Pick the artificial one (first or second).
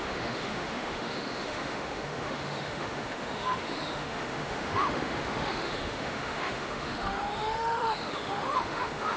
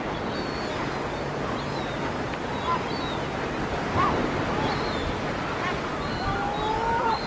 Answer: first